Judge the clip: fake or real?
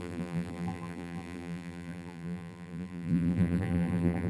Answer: fake